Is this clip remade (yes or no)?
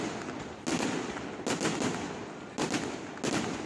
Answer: no